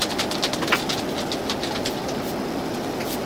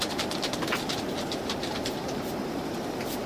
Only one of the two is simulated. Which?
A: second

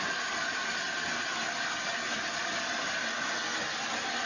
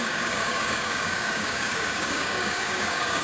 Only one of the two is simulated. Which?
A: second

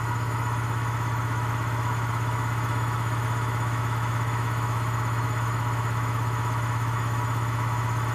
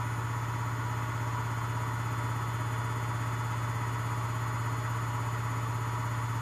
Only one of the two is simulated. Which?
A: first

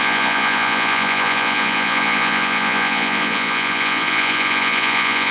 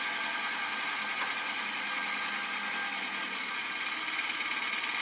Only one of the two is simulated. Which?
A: first